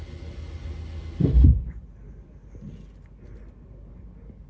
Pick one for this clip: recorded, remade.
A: recorded